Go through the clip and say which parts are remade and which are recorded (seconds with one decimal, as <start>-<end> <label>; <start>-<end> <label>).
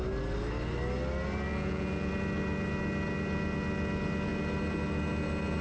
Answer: 0.0-1.5 recorded; 1.5-2.1 remade; 2.1-5.6 recorded